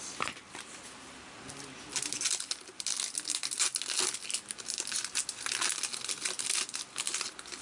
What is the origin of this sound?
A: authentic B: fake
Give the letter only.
A